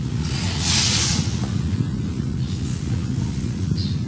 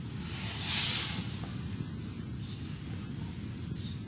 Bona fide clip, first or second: second